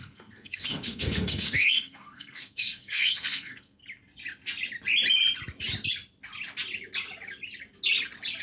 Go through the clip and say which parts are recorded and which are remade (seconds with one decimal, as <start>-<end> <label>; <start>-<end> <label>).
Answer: 0.0-3.8 remade; 3.8-8.4 recorded